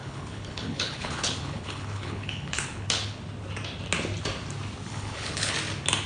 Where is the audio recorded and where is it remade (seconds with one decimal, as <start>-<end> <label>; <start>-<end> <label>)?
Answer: 0.0-3.2 remade; 3.2-4.9 recorded; 4.9-5.5 remade; 5.5-6.1 recorded